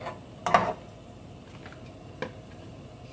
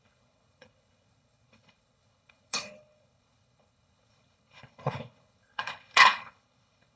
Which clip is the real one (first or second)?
first